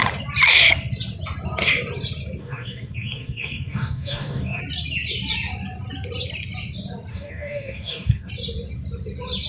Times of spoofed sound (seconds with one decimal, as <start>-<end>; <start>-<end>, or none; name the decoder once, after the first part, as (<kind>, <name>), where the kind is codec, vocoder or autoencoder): 2.4-4.6 (codec, DAC); 7.1-8.3